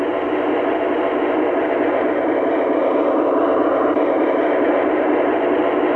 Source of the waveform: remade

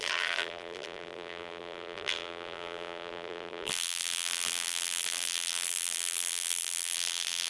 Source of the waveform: remade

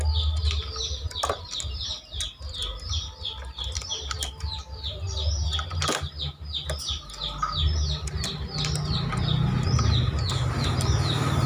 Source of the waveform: recorded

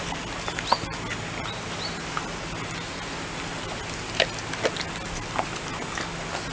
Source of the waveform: recorded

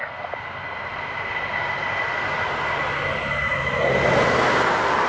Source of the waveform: recorded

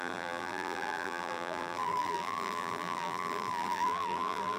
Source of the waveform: remade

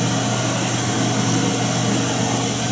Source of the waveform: recorded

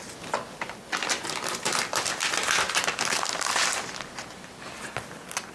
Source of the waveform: recorded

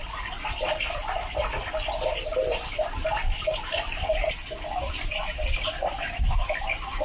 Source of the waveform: remade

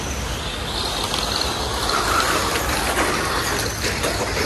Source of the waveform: recorded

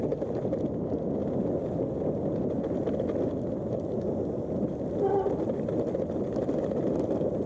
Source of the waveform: recorded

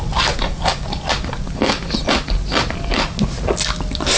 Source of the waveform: recorded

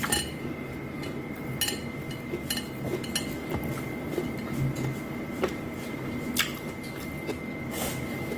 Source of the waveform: recorded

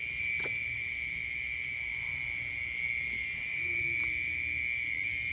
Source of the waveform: recorded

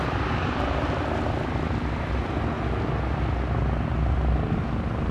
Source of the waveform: recorded